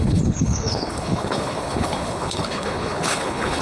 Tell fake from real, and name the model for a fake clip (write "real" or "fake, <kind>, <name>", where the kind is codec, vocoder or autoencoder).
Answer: fake, codec, HILCodec